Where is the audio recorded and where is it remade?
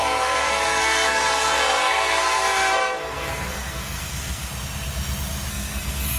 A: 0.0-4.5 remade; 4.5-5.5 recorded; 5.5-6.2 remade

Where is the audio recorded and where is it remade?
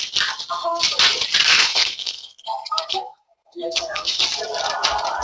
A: 0.0-1.5 recorded; 1.5-4.2 remade; 4.2-5.2 recorded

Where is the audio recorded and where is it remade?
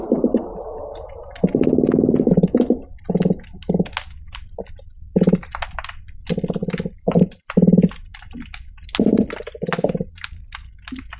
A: 0.0-11.2 recorded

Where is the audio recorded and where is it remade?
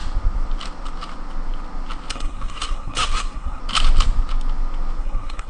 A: 0.0-2.1 recorded; 2.1-3.6 remade; 3.6-5.0 recorded; 5.0-5.5 remade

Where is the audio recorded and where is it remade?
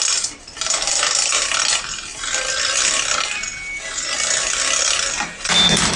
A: 0.0-6.0 recorded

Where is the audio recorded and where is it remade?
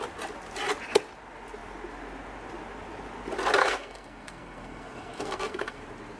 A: 0.0-3.6 recorded; 3.6-5.8 remade; 5.8-6.2 recorded